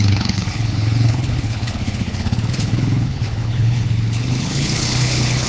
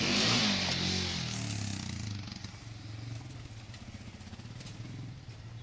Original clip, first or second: second